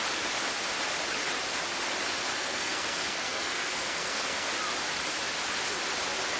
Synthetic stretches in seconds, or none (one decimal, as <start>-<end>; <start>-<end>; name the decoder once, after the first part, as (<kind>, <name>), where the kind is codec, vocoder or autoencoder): 2.3-4.5 (codec, SNAC)